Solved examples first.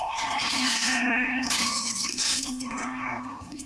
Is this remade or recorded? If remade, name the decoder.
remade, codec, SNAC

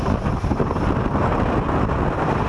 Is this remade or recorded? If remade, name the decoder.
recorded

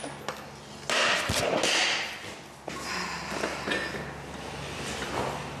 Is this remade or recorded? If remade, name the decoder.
recorded